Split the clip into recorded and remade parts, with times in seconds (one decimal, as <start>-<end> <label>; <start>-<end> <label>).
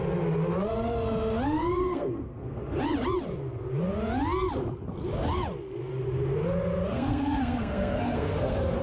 0.0-1.8 recorded; 1.8-2.8 remade; 2.8-6.9 recorded; 6.9-8.8 remade